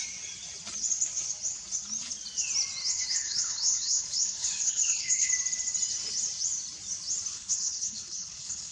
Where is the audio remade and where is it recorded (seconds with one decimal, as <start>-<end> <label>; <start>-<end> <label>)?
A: 0.0-2.8 recorded; 2.8-5.3 remade; 5.3-7.3 recorded; 7.3-8.7 remade